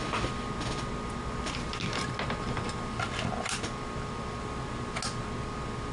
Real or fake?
real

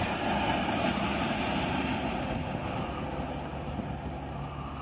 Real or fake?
real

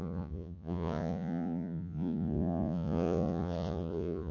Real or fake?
fake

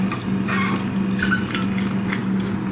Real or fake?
real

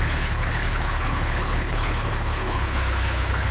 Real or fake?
fake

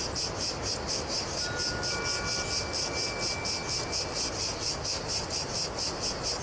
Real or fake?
real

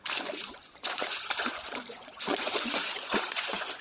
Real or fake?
fake